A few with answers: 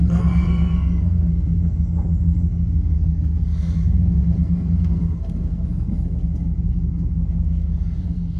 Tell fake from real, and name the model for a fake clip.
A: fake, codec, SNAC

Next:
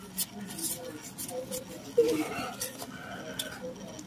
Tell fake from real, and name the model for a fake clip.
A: real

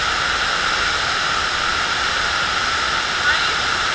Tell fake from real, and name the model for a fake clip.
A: real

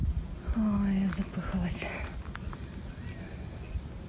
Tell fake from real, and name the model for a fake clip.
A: real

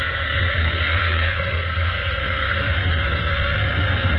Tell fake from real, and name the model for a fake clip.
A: fake, codec, SNAC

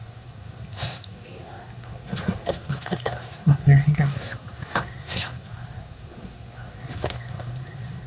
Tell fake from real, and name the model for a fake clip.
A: fake, codec, SNAC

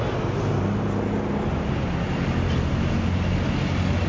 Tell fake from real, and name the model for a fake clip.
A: real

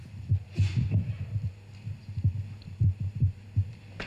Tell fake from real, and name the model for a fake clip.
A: real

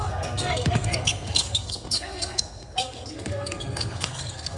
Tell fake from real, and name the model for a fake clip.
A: fake, codec, SNAC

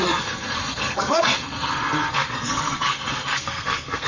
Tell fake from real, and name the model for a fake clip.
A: fake, codec, SNAC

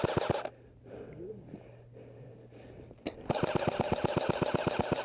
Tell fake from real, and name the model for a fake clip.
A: real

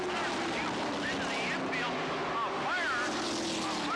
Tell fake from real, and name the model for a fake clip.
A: real